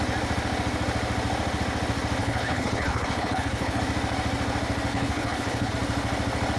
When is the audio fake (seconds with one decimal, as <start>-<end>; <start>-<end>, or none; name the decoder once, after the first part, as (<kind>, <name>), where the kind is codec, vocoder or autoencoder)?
2.2-3.8 (codec, HILCodec); 4.9-5.7